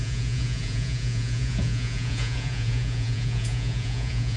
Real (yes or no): no